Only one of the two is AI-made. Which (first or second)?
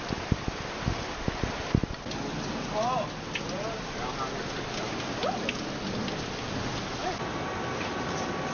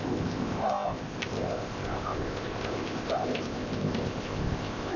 second